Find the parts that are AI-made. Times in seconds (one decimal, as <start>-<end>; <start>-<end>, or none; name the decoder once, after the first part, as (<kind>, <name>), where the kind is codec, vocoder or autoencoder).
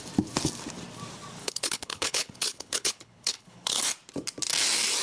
1.4-3.8 (codec, HILCodec)